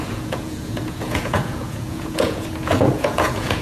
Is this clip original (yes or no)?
no